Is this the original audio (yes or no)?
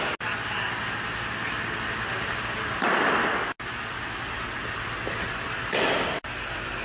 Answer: yes